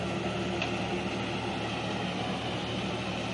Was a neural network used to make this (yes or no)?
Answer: no